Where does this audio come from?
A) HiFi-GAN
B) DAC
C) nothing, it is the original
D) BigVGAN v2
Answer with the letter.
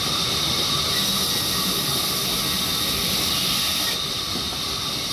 C